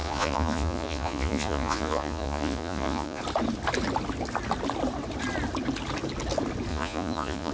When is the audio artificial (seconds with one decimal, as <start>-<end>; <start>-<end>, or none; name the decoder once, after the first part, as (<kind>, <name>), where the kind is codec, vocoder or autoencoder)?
0.0-3.2 (vocoder, Vocos); 6.7-7.5